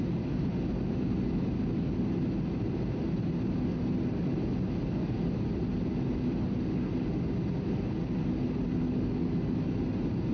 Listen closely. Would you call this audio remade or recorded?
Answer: recorded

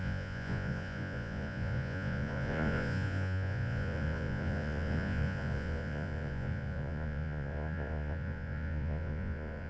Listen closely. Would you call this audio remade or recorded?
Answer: remade